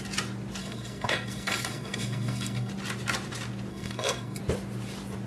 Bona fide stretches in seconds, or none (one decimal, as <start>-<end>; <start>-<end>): 0.0-0.6; 2.7-3.7; 4.4-5.3

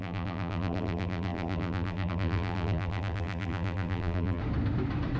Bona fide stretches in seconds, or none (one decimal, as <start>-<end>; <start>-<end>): 4.4-5.2

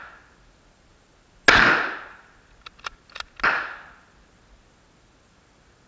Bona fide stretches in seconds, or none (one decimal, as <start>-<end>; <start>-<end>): 0.0-5.9